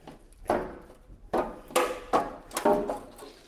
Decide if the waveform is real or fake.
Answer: real